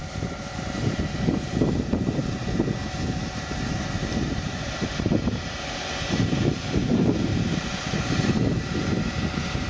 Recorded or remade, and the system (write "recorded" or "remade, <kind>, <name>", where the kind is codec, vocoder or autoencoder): remade, vocoder, BigVGAN v2